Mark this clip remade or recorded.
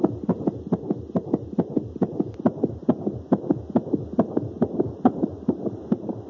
recorded